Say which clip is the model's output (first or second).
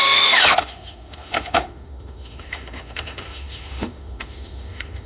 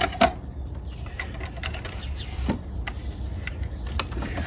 first